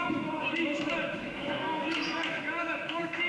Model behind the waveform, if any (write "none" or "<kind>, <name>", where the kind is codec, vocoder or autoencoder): autoencoder, DAC-VAE